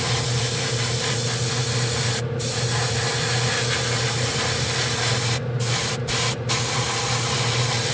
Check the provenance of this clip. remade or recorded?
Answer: recorded